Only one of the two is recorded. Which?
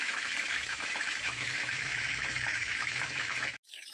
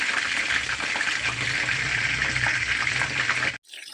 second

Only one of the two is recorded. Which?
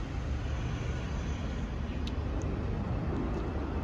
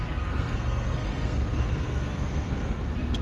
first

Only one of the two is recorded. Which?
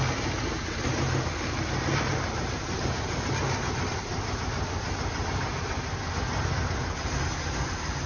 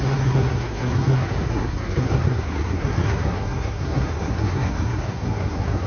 first